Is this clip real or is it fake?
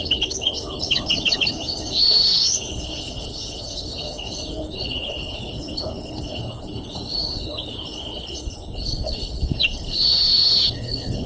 fake